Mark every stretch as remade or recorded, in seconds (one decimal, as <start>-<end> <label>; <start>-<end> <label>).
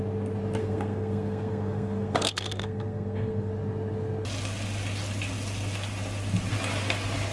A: 0.0-0.6 recorded; 0.6-3.5 remade; 3.5-7.3 recorded